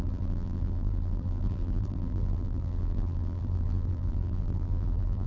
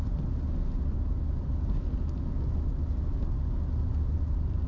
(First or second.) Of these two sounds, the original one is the second